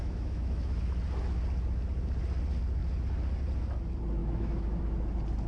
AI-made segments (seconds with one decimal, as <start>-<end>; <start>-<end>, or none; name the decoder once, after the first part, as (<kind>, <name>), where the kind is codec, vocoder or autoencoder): 0.0-0.8 (autoencoder, DAC-VAE); 4.2-4.8